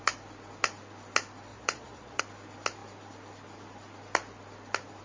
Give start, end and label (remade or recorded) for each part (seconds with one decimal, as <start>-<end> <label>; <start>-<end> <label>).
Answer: 0.0-1.5 recorded; 1.5-2.2 remade; 2.2-5.0 recorded